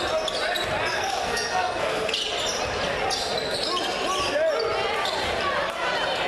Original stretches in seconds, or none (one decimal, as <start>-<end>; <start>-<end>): 0.0-0.9; 2.1-6.3